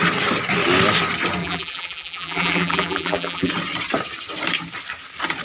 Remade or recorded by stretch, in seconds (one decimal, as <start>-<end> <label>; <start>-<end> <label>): 0.0-1.4 recorded; 1.4-3.5 remade; 3.5-5.4 recorded